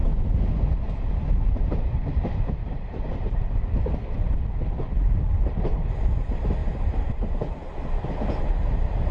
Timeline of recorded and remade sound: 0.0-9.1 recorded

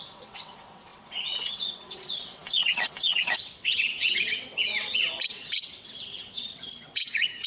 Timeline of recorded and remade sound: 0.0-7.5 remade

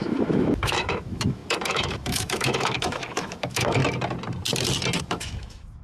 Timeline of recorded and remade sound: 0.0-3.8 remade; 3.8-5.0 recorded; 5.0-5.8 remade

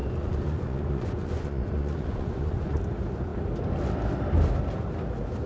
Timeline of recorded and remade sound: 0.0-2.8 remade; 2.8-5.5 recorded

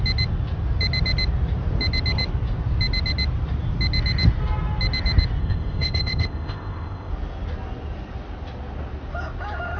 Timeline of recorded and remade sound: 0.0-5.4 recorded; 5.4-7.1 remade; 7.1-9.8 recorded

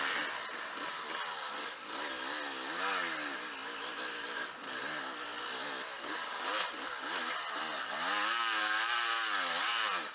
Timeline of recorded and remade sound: 0.0-10.1 recorded

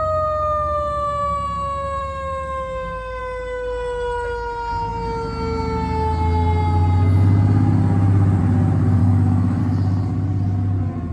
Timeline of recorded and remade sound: 0.0-2.0 recorded; 2.0-3.2 remade; 3.2-9.0 recorded; 9.0-9.6 remade; 9.6-11.1 recorded